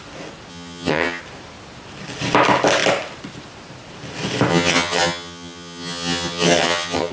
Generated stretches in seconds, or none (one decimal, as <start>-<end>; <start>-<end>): 0.5-1.2; 4.5-7.1